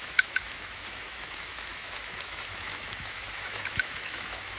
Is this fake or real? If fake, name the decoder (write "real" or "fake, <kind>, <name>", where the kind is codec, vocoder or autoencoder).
fake, autoencoder, DAC-VAE